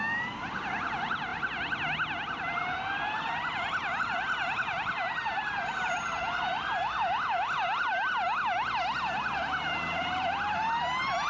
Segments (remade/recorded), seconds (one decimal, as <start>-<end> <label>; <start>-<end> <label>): 0.0-11.3 recorded

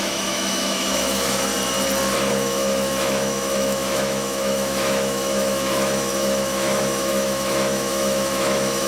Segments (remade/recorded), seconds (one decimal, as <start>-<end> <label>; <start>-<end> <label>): 0.0-1.5 remade; 1.5-2.3 recorded; 2.3-8.9 remade

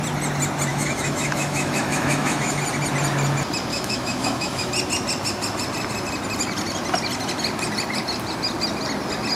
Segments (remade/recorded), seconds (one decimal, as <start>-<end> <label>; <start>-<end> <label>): 0.0-0.7 recorded; 0.7-2.6 remade; 2.6-3.7 recorded; 3.7-4.7 remade; 4.7-9.4 recorded

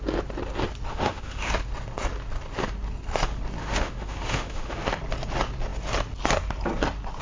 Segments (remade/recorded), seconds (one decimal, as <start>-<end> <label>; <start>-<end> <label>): 0.0-0.9 recorded; 0.9-1.5 remade; 1.5-3.6 recorded; 3.6-4.8 remade; 4.8-7.2 recorded

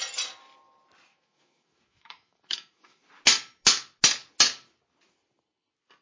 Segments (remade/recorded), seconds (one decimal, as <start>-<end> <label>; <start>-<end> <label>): 0.0-1.1 recorded; 1.1-3.0 remade; 3.0-6.0 recorded

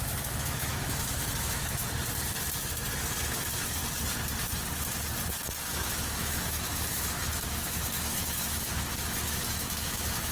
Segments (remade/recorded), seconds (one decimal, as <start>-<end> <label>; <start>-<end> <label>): 0.0-1.8 remade; 1.8-3.3 recorded; 3.3-3.8 remade; 3.8-5.7 recorded; 5.7-10.3 remade